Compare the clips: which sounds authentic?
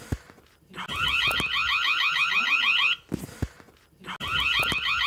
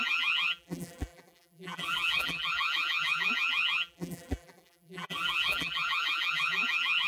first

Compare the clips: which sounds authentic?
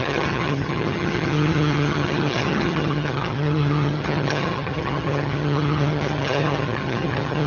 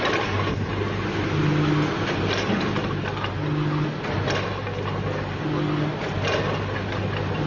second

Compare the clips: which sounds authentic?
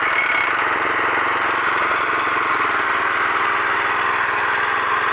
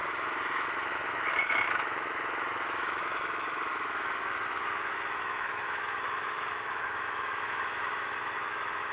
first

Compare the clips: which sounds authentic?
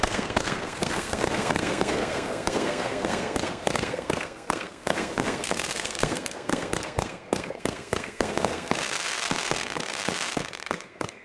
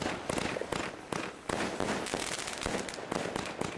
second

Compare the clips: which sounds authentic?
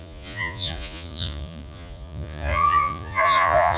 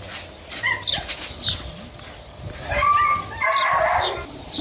second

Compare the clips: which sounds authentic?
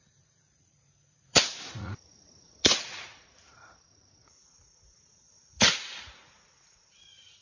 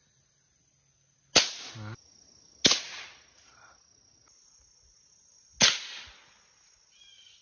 second